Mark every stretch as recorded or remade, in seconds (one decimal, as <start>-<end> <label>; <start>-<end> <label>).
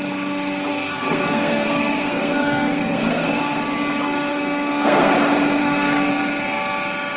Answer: 0.0-0.7 recorded; 0.7-3.6 remade; 3.6-4.3 recorded; 4.3-5.1 remade; 5.1-5.6 recorded; 5.6-6.1 remade; 6.1-7.2 recorded